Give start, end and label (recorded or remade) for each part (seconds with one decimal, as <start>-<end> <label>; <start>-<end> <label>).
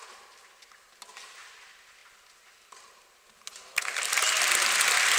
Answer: 0.0-5.2 recorded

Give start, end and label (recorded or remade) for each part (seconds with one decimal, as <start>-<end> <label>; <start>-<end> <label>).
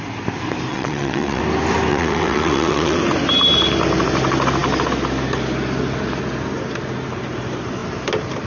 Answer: 0.0-0.7 recorded; 0.7-1.4 remade; 1.4-1.9 recorded; 1.9-3.0 remade; 3.0-8.5 recorded